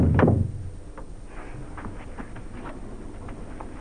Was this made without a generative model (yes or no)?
yes